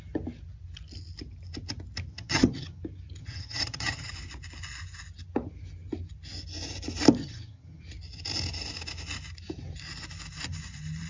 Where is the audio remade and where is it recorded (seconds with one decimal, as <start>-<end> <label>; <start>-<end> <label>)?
0.0-2.1 recorded; 2.1-2.8 remade; 2.8-3.2 recorded; 3.2-4.1 remade; 4.1-7.2 recorded; 7.2-7.8 remade; 7.8-11.1 recorded